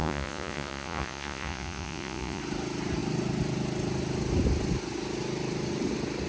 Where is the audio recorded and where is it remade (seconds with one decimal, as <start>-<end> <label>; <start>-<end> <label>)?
0.0-2.4 remade; 2.4-6.3 recorded

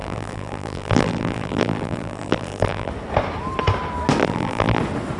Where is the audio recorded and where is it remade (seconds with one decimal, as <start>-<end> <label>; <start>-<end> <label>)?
0.0-2.9 remade; 2.9-4.2 recorded; 4.2-4.8 remade; 4.8-5.2 recorded

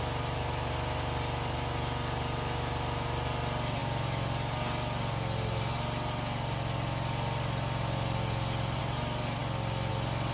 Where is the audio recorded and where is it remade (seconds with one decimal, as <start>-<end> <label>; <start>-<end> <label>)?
0.0-10.3 recorded

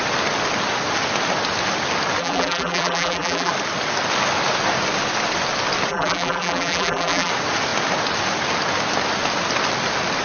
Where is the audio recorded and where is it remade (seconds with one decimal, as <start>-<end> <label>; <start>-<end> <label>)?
0.0-2.2 recorded; 2.2-3.5 remade; 3.5-5.9 recorded; 5.9-7.3 remade; 7.3-10.2 recorded

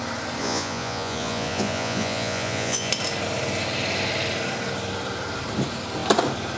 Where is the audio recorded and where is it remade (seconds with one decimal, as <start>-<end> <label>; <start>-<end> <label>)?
0.0-0.4 recorded; 0.4-2.9 remade; 2.9-6.6 recorded